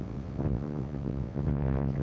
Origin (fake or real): fake